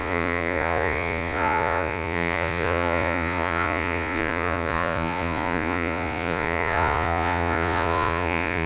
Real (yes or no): no